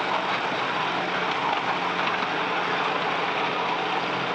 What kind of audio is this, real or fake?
real